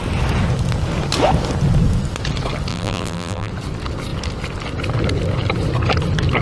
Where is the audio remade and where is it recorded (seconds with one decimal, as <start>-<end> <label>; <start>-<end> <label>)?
0.0-2.7 recorded; 2.7-3.5 remade; 3.5-6.4 recorded